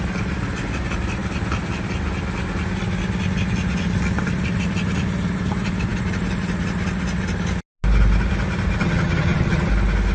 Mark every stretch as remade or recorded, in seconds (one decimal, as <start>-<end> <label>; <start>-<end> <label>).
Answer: 0.0-8.8 recorded; 8.8-9.7 remade; 9.7-10.1 recorded